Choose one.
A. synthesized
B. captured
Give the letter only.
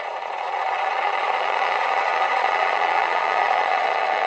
A